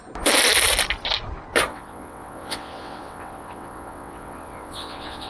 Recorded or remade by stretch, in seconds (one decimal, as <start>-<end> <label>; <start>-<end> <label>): 0.0-1.7 recorded; 1.7-5.3 remade

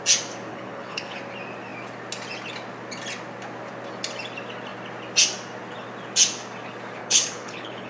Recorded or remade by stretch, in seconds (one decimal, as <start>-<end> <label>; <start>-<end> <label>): 0.0-0.5 recorded; 0.5-1.2 remade; 1.2-7.0 recorded; 7.0-7.9 remade

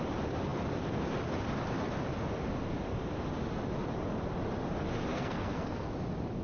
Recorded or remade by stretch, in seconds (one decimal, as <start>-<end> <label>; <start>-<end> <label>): 0.0-5.1 recorded; 5.1-5.9 remade; 5.9-6.4 recorded

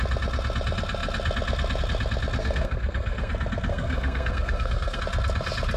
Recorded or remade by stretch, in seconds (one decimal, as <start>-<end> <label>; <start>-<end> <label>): 0.0-2.4 recorded; 2.4-3.3 remade; 3.3-3.7 recorded; 3.7-5.0 remade; 5.0-5.8 recorded

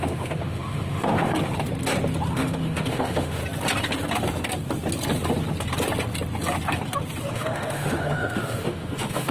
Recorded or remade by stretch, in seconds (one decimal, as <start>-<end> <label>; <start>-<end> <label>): 0.0-1.3 remade; 1.3-2.3 recorded; 2.3-3.4 remade; 3.4-7.3 recorded; 7.3-9.3 remade

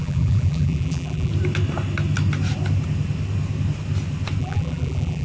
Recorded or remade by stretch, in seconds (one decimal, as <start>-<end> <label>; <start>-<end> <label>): 0.0-1.3 remade; 1.3-4.4 recorded; 4.4-5.2 remade